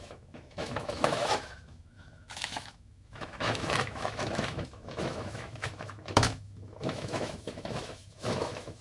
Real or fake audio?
fake